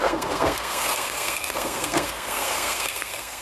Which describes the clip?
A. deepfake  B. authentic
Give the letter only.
A